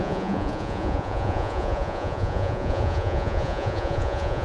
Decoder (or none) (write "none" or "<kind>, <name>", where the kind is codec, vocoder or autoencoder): vocoder, Vocos